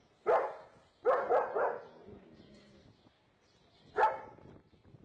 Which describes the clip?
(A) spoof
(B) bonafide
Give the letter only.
B